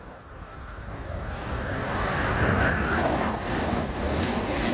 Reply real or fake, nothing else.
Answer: fake